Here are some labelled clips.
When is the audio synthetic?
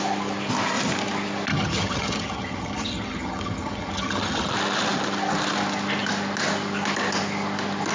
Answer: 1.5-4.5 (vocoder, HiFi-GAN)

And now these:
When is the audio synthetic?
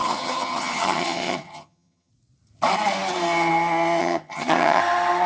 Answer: 0.0-2.1 (vocoder, HiFi-GAN); 4.0-4.8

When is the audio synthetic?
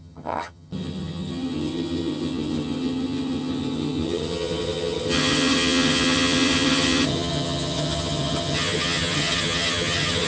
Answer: 0.0-10.3 (vocoder, HiFi-GAN)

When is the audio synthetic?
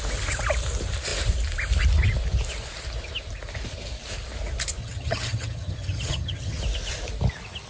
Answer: 4.8-6.6 (vocoder, HiFi-GAN)